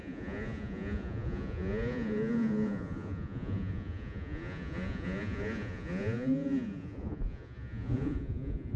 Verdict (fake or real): fake